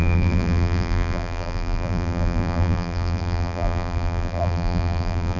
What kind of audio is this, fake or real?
fake